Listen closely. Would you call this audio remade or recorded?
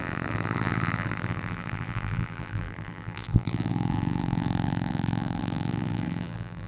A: remade